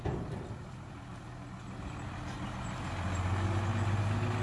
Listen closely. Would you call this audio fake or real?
real